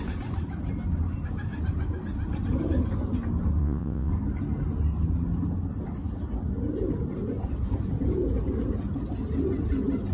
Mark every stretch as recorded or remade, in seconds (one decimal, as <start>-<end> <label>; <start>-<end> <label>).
0.0-3.6 recorded; 3.6-4.1 remade; 4.1-10.1 recorded